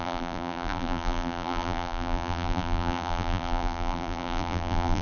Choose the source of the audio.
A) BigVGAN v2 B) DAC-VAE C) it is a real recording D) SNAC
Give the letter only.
A